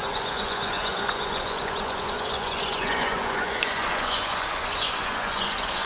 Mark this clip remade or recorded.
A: remade